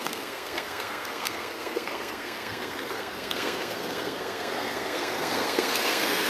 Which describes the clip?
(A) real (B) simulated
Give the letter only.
B